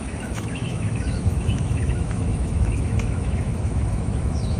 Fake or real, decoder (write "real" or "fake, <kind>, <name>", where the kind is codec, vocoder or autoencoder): fake, autoencoder, DAC-VAE